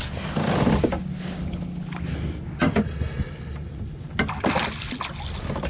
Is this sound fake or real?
real